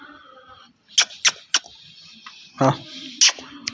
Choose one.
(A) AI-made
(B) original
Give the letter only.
B